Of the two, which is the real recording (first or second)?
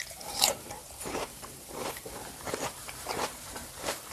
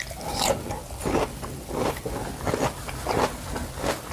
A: second